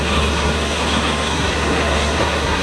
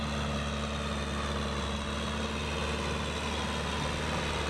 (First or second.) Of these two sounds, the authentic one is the second